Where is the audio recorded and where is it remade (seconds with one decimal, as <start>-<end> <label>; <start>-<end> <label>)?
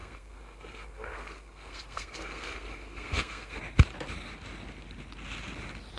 0.0-3.6 remade; 3.6-6.0 recorded